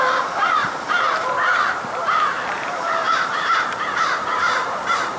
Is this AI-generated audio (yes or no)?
yes